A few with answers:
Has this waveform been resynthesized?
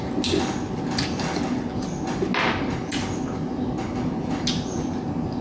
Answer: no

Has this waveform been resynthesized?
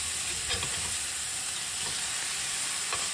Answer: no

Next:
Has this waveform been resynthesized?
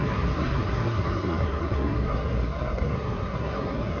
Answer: yes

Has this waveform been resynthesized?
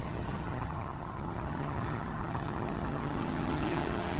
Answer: yes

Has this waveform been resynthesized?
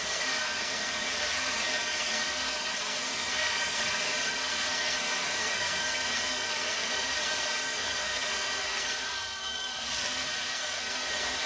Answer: yes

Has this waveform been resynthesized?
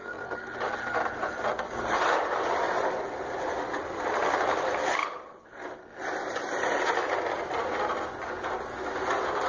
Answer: no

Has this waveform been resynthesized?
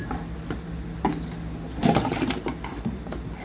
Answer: no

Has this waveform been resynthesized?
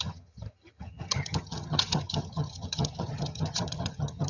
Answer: yes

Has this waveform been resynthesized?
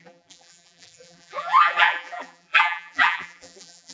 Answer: yes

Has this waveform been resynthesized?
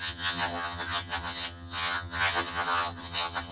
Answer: yes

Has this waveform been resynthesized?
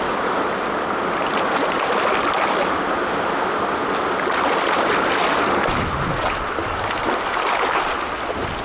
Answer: no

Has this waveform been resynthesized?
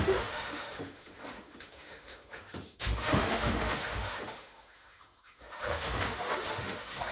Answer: yes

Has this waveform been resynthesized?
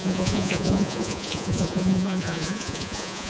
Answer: yes